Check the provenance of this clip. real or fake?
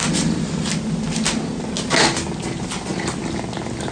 real